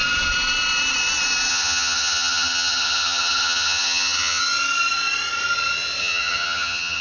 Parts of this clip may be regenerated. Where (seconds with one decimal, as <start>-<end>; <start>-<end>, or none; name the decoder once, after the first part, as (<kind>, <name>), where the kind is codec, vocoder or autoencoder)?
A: 1.5-4.4 (vocoder, HiFi-GAN); 6.0-7.0